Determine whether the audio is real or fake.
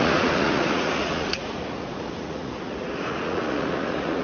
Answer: fake